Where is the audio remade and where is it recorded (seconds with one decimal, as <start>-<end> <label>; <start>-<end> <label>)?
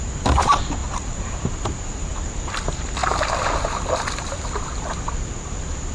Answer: 0.0-5.9 recorded